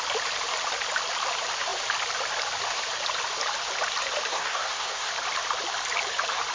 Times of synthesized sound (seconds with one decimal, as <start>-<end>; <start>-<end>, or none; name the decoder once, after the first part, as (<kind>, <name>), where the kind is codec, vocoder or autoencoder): 4.3-5.1 (codec, SNAC)